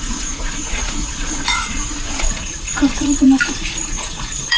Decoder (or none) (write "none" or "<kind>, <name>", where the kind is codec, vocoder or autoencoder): vocoder, Vocos